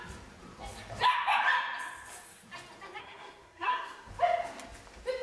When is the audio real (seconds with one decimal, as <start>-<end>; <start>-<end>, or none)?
0.0-3.0; 4.1-5.2